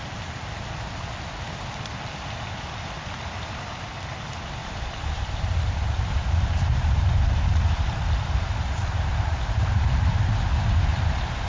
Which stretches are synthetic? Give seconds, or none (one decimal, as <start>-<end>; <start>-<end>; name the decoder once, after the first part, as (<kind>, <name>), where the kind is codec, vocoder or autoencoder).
4.6-8.1 (vocoder, BigVGAN v2); 8.8-10.4; 10.9-11.5